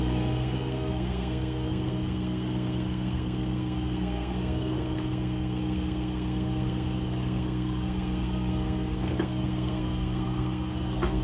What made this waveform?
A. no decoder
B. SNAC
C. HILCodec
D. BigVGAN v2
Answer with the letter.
B